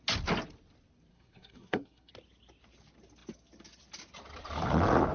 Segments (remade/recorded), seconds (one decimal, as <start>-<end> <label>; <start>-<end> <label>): 0.0-1.1 recorded; 1.1-2.1 remade; 2.1-5.1 recorded